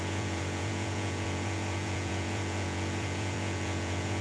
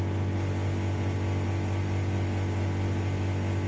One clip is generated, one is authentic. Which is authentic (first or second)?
second